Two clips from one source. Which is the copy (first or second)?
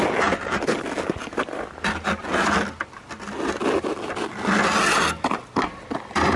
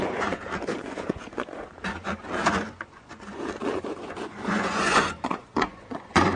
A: second